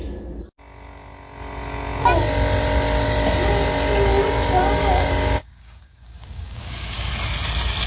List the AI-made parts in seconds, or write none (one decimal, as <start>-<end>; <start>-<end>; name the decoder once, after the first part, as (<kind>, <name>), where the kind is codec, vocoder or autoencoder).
4.6-7.1 (codec, DAC)

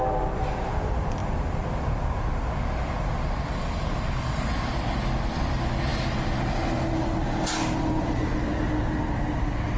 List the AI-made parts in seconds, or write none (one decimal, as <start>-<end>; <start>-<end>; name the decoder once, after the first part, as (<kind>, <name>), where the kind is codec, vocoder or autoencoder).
3.5-4.5 (codec, DAC)

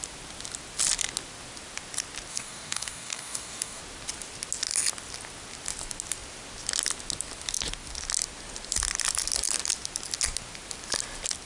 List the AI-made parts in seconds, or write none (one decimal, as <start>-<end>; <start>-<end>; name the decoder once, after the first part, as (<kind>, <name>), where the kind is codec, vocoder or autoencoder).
2.3-3.8 (codec, DAC)

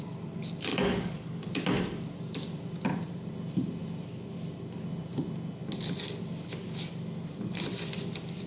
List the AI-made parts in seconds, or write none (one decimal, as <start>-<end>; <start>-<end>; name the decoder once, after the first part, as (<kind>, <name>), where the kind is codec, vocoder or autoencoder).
0.7-1.5 (codec, DAC)

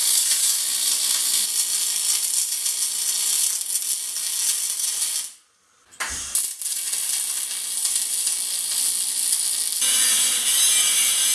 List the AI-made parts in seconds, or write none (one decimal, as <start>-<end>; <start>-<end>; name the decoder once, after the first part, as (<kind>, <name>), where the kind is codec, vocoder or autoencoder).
0.0-0.6 (codec, DAC)

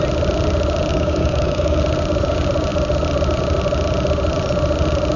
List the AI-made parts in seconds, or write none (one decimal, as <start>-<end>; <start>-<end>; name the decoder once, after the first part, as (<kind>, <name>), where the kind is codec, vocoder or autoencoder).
0.9-1.8 (codec, DAC)

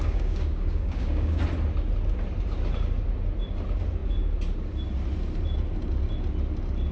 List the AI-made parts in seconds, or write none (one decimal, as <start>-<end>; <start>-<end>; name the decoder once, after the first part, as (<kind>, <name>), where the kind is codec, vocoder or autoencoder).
0.0-1.4 (codec, DAC)